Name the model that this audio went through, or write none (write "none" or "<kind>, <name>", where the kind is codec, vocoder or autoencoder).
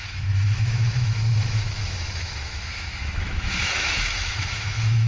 autoencoder, DAC-VAE